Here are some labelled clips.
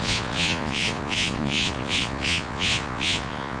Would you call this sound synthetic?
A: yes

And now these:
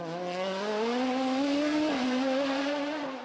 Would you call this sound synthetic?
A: no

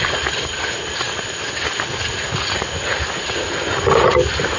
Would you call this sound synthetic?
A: no